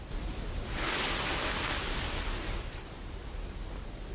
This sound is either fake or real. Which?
real